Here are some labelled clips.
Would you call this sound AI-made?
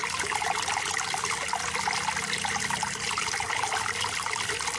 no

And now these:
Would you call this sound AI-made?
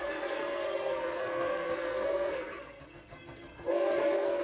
yes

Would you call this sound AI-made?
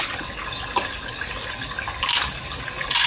no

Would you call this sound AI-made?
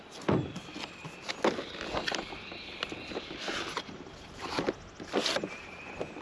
no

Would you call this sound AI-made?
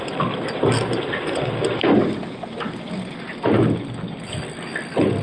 no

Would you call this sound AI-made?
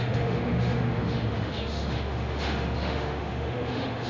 yes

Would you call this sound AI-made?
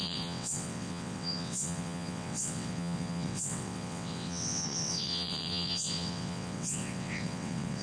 yes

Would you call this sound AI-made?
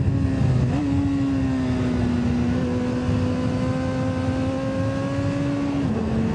no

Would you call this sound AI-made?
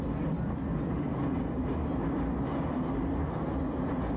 no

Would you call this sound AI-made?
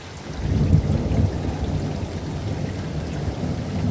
no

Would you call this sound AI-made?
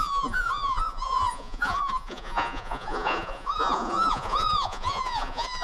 yes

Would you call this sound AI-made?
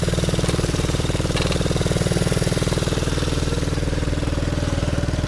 yes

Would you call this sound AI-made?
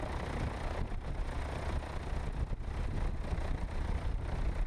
no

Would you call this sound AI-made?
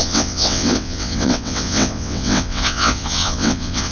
yes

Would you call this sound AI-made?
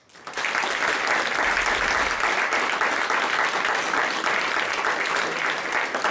no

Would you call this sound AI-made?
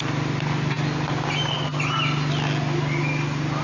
no